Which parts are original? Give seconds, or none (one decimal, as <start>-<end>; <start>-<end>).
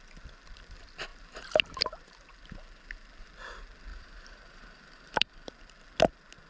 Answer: 0.0-3.9; 5.5-6.5